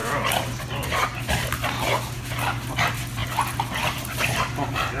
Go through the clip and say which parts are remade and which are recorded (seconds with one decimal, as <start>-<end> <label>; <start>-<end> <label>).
0.0-5.0 recorded